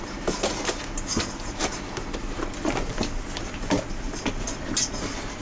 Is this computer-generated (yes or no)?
no